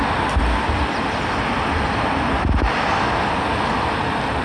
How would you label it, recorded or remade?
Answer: recorded